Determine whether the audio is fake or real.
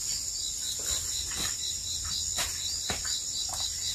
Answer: real